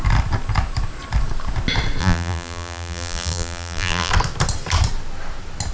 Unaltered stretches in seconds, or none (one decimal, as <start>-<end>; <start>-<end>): 0.0-2.0; 4.1-5.7